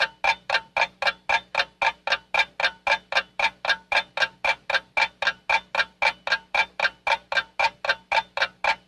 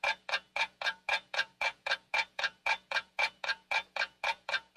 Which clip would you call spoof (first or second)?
second